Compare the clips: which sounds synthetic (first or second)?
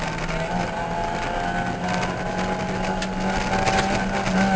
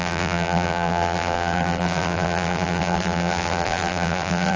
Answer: second